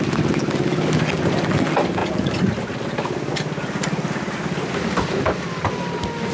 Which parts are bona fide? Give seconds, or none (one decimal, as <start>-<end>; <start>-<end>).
0.0-6.3